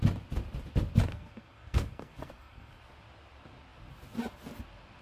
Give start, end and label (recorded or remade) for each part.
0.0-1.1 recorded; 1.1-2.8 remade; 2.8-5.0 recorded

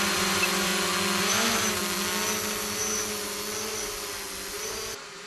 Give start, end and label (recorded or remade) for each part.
0.0-0.7 remade; 0.7-1.2 recorded; 1.2-1.8 remade; 1.8-4.5 recorded; 4.5-5.3 remade

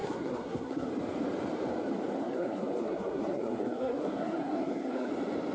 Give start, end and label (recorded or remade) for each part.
0.0-0.9 remade; 0.9-2.2 recorded; 2.2-5.1 remade; 5.1-5.5 recorded

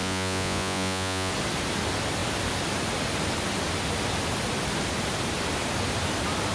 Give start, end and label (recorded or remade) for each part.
0.0-1.3 remade; 1.3-6.5 recorded

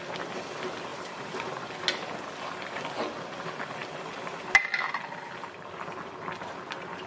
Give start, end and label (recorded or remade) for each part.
0.0-0.9 recorded; 0.9-1.7 remade; 1.7-7.1 recorded

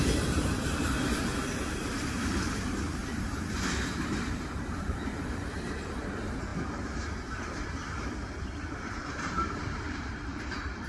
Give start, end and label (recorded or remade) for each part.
0.0-10.9 remade

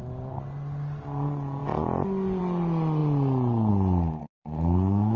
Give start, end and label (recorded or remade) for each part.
0.0-4.2 recorded; 4.2-5.2 remade